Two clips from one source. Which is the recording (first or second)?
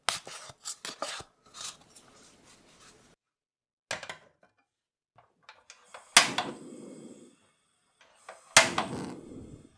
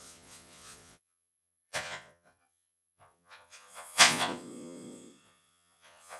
first